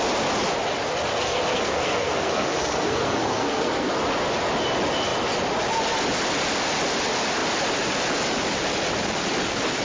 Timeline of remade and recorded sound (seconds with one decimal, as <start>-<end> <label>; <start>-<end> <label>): 0.0-1.1 recorded; 1.1-3.9 remade; 3.9-9.8 recorded